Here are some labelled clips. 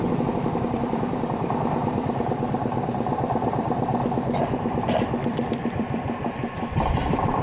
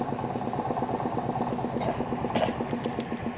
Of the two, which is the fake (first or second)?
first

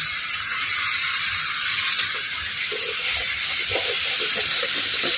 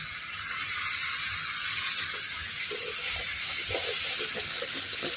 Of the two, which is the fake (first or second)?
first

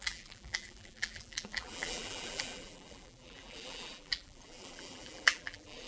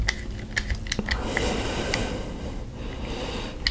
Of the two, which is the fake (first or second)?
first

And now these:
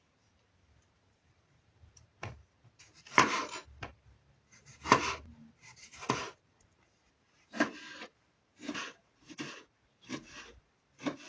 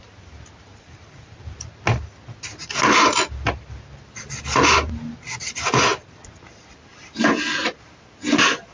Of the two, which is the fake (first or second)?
first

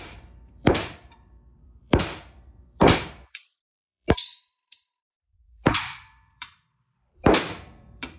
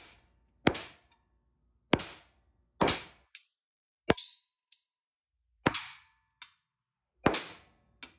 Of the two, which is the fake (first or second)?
first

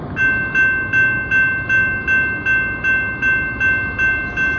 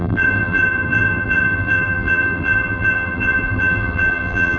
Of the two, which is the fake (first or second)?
second